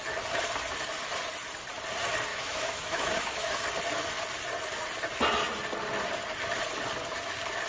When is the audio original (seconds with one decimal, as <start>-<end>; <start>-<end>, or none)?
0.0-2.3; 3.5-7.7